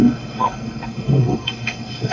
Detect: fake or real fake